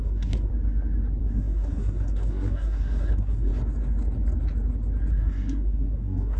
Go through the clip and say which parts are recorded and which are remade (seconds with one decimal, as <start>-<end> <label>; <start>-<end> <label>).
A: 0.0-0.5 remade; 0.5-1.2 recorded; 1.2-3.5 remade; 3.5-5.1 recorded; 5.1-6.4 remade